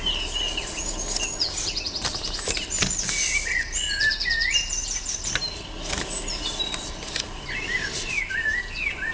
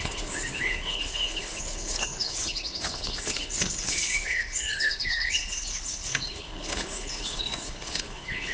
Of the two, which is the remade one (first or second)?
second